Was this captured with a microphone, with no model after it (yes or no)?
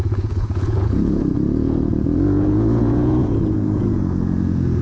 no